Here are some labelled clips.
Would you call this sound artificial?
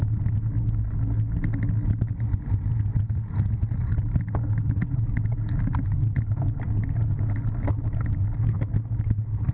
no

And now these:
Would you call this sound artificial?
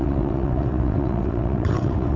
yes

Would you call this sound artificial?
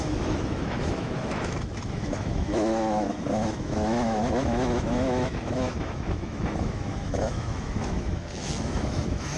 yes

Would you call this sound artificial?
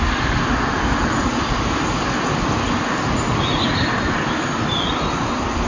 no